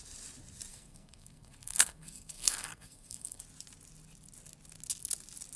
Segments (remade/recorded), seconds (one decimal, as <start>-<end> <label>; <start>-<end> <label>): 0.0-0.7 recorded; 0.7-3.4 remade; 3.4-5.6 recorded